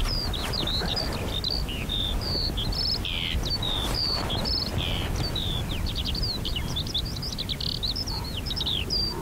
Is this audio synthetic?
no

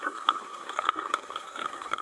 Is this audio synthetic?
yes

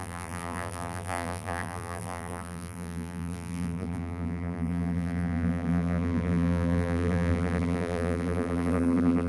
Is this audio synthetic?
yes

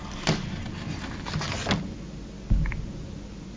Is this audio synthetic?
no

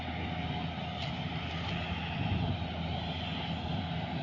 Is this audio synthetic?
no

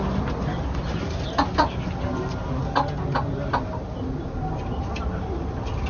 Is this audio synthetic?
no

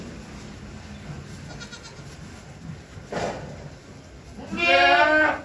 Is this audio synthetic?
no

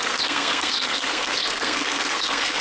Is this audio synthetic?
yes